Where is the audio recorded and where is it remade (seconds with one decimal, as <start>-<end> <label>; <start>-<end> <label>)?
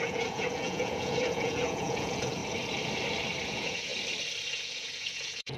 0.0-2.4 remade; 2.4-3.5 recorded; 3.5-3.9 remade; 3.9-4.5 recorded; 4.5-5.6 remade